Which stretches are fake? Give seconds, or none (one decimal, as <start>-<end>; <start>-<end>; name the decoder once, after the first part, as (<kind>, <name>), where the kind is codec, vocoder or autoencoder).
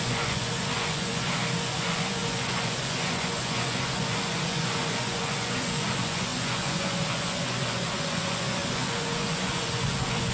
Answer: 0.0-10.3 (vocoder, Vocos)